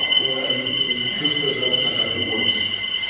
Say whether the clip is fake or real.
fake